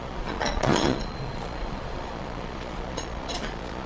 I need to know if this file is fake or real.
fake